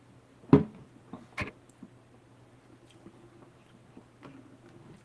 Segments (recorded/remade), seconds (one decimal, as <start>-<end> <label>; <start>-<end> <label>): 0.0-5.0 recorded